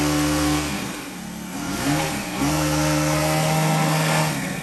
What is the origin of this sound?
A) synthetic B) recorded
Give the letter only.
A